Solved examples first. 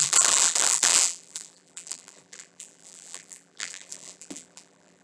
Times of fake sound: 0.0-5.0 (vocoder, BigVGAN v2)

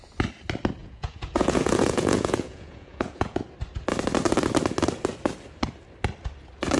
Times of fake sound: 0.8-3.4 (vocoder, Vocos)

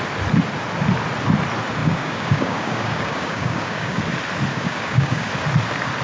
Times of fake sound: 1.8-4.0 (codec, DAC); 4.5-5.3

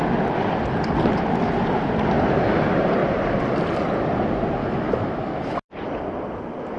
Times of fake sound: 4.6-5.7 (autoencoder, DAC-VAE)

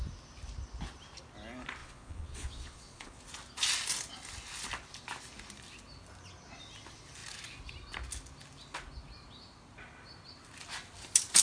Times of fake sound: 1.8-3.2 (vocoder, Vocos)